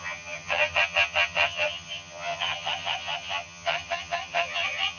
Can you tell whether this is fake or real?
fake